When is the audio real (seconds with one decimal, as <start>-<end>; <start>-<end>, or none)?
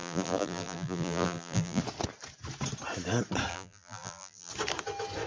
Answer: 1.8-3.5; 4.5-5.3